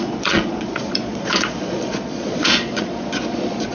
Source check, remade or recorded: remade